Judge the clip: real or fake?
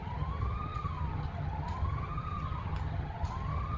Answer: fake